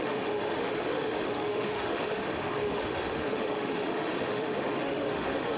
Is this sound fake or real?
fake